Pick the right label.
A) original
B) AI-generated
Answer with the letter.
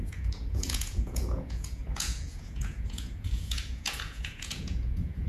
B